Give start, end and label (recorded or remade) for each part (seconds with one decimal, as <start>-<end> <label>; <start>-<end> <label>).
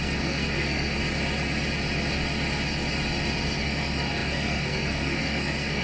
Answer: 0.0-1.0 remade; 1.0-3.6 recorded; 3.6-5.8 remade